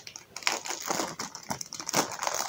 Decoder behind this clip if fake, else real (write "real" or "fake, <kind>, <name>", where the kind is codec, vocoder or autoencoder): real